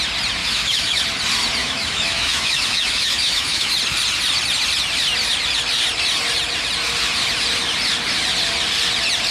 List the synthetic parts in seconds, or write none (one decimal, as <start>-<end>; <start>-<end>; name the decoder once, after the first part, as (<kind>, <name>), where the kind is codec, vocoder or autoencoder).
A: 0.4-1.0 (autoencoder, DAC-VAE); 1.6-3.7